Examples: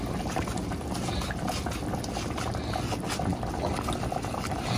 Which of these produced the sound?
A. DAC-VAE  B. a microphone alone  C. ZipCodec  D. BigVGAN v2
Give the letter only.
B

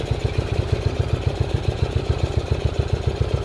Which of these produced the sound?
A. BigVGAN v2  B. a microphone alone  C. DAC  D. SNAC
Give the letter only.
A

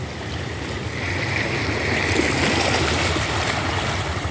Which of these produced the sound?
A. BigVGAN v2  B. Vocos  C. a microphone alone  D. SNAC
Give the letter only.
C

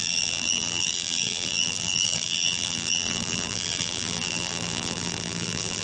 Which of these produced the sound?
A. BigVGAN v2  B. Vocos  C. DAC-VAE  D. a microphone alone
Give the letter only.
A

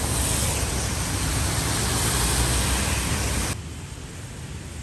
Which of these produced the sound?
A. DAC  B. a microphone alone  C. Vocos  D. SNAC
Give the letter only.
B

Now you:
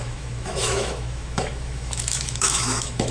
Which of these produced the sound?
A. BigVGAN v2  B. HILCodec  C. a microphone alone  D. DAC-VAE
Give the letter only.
D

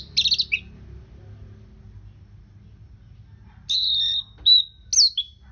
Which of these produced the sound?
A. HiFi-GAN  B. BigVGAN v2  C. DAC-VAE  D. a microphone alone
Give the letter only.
D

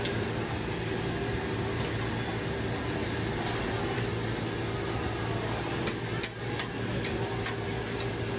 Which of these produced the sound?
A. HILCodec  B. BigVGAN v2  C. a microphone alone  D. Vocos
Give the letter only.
C